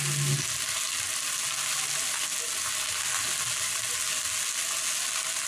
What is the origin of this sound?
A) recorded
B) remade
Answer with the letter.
A